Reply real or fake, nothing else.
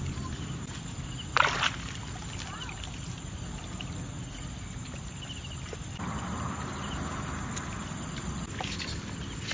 real